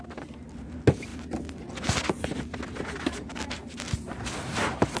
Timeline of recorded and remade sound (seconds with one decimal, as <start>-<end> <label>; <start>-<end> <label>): 0.0-5.0 recorded